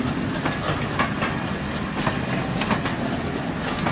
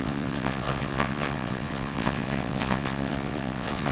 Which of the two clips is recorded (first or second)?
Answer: first